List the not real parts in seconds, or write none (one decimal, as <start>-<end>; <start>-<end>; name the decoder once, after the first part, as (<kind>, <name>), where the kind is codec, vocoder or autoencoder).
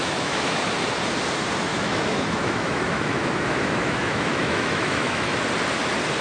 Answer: 0.0-0.7 (autoencoder, DAC-VAE); 1.7-5.4